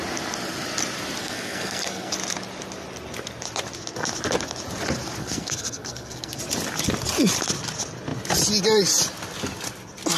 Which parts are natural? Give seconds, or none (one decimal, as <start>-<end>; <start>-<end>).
0.0-1.2; 2.1-5.2; 6.4-10.2